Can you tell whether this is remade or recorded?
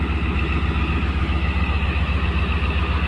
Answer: recorded